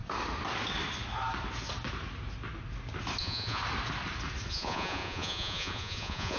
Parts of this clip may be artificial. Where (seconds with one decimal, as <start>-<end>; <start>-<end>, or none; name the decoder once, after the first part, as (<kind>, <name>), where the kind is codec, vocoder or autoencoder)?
3.2-3.6 (vocoder, Vocos); 4.5-6.4

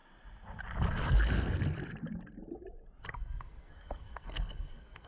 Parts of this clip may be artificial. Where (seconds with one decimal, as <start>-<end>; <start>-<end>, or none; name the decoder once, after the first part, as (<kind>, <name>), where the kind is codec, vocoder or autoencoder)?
3.1-5.1 (codec, SNAC)

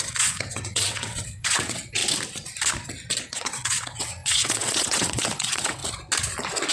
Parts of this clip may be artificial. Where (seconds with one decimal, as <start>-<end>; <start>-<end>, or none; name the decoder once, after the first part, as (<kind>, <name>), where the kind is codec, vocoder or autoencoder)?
0.0-2.0 (vocoder, WaveNeXt); 3.2-5.8

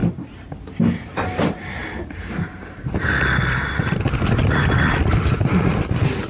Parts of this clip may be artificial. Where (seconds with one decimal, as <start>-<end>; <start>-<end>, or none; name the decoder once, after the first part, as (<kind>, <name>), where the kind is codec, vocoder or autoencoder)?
0.7-1.8 (vocoder, BigVGAN v2); 3.7-6.3

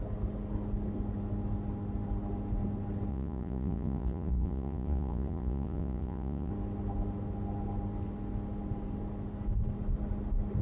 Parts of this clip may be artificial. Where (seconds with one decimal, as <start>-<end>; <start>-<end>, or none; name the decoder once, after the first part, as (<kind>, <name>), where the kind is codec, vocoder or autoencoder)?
3.1-6.5 (vocoder, Vocos)